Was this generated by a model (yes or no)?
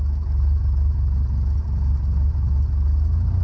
no